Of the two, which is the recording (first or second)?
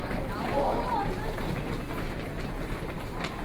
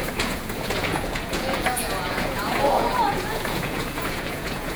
first